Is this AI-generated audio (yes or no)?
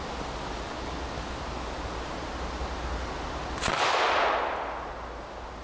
no